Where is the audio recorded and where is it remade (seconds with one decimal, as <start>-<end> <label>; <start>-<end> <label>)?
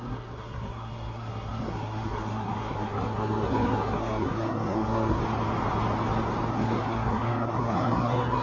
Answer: 0.0-5.2 remade; 5.2-6.5 recorded; 6.5-8.4 remade